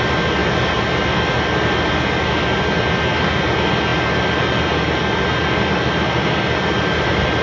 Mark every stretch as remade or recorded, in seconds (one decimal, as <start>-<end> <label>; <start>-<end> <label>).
0.0-7.4 recorded

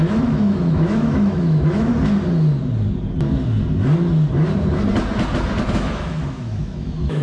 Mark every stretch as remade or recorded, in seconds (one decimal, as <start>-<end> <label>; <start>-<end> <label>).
0.0-1.9 remade; 1.9-5.7 recorded; 5.7-7.2 remade